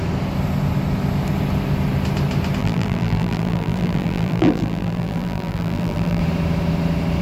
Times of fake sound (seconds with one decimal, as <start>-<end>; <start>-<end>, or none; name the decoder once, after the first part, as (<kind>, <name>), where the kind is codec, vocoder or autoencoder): 2.6-6.2 (vocoder, BigVGAN v2)